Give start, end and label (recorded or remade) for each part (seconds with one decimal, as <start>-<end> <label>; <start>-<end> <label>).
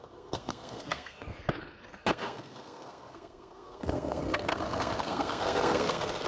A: 0.0-6.3 remade